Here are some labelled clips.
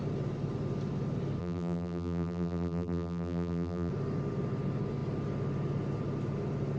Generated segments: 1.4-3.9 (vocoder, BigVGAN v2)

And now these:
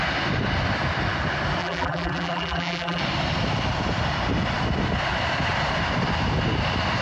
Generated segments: 1.6-3.0 (vocoder, BigVGAN v2)

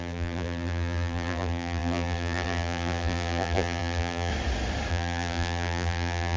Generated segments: 0.0-4.3 (vocoder, BigVGAN v2); 4.9-6.4